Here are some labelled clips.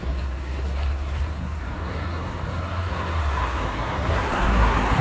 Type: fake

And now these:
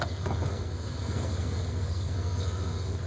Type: fake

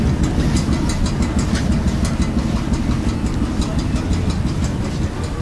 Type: real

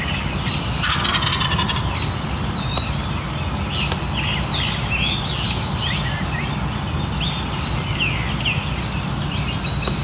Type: real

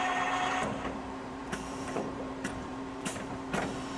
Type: fake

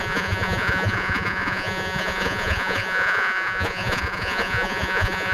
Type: fake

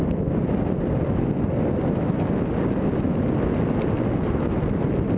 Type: real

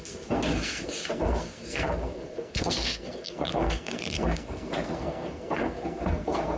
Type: fake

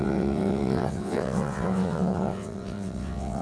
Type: fake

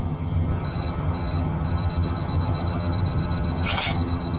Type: fake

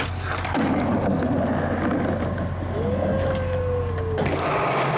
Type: real